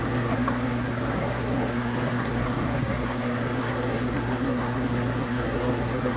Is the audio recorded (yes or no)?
no